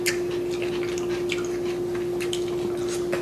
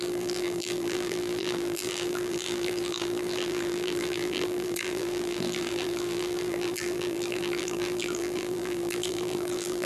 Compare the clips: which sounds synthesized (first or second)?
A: second